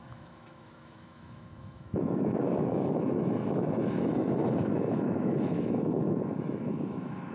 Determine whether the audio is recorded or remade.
remade